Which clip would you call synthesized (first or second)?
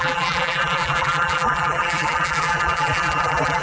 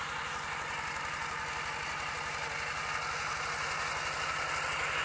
first